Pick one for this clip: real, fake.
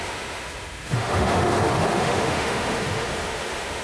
fake